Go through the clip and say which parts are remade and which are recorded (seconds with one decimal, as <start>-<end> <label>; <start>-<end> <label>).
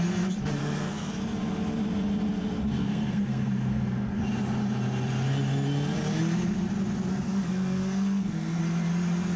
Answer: 0.0-0.6 recorded; 0.6-1.1 remade; 1.1-2.7 recorded; 2.7-4.2 remade; 4.2-7.1 recorded; 7.1-8.6 remade; 8.6-9.4 recorded